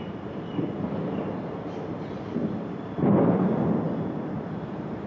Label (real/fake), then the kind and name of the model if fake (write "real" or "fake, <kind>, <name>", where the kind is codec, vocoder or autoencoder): real